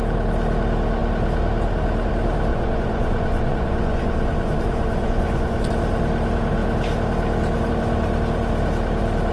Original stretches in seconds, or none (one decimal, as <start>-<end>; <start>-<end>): 0.0-2.5; 5.7-9.3